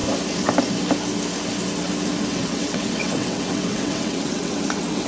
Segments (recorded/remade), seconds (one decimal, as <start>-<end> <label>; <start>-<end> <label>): 0.0-2.3 recorded; 2.3-5.1 remade